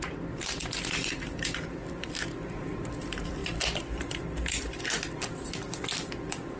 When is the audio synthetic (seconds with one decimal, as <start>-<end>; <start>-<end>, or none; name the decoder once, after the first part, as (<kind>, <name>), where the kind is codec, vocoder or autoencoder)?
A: 0.0-6.6 (vocoder, BigVGAN v2)